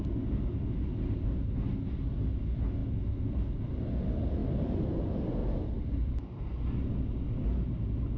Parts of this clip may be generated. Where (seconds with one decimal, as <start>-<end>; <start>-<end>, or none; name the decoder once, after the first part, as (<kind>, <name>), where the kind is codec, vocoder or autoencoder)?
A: 2.8-3.4 (vocoder, BigVGAN v2); 5.4-6.4